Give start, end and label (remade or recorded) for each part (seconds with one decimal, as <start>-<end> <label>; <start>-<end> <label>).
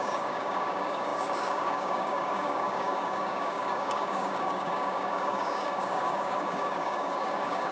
0.0-7.7 remade